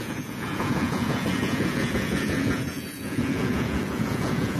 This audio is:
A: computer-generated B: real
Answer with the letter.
A